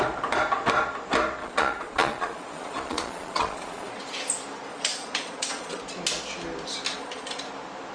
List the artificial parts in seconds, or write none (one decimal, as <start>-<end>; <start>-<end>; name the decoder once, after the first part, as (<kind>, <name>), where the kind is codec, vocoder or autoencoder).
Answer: 1.4-4.0 (vocoder, Vocos); 4.7-5.8; 6.9-7.4